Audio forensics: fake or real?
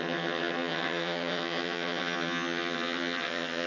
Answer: fake